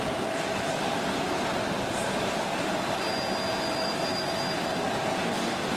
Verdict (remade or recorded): recorded